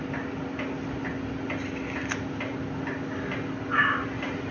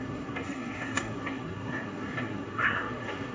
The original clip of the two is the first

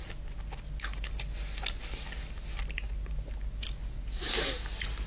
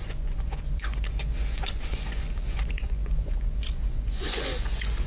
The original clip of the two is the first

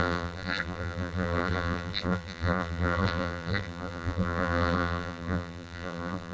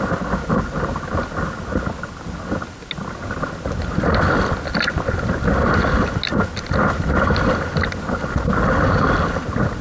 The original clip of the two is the second